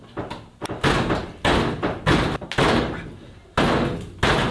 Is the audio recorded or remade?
recorded